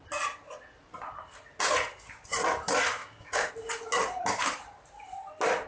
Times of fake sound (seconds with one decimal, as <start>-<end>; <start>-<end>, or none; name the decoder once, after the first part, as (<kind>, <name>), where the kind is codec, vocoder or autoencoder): 3.0-3.5 (codec, DAC)